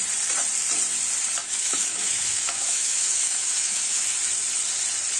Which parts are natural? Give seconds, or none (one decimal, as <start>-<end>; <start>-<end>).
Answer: 0.0-1.4; 4.0-5.2